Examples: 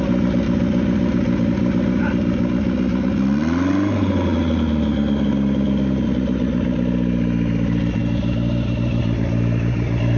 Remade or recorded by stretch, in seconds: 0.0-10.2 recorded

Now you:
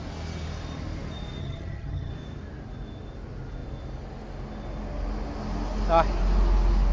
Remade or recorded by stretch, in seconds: 0.0-1.4 recorded; 1.4-2.1 remade; 2.1-6.9 recorded

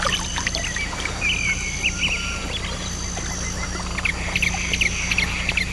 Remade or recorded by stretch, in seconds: 0.0-5.7 recorded

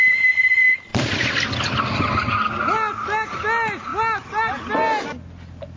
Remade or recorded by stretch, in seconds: 0.0-5.8 recorded

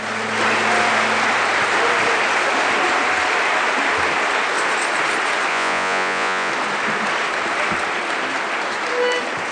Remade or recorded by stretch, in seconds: 0.0-5.5 recorded; 5.5-6.5 remade; 6.5-9.5 recorded